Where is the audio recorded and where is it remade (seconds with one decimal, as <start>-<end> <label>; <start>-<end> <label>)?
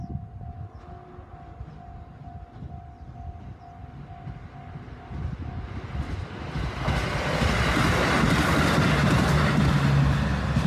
0.0-10.7 recorded